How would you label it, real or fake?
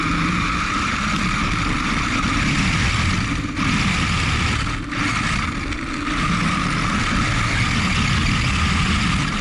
real